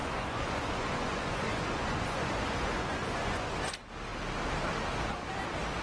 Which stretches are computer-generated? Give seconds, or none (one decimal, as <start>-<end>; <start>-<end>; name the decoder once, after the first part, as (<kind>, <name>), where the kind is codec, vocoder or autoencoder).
0.0-3.5 (vocoder, Vocos)